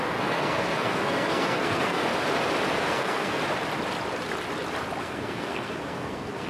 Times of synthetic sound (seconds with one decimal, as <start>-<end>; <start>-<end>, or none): 0.0-2.0; 2.8-3.4; 5.0-6.5